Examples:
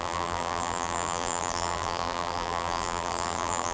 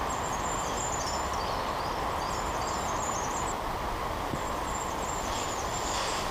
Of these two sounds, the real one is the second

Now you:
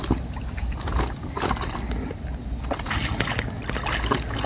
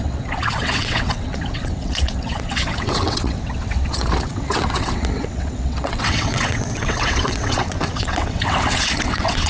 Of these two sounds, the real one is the first